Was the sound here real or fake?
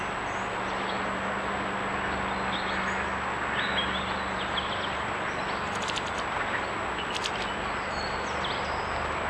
real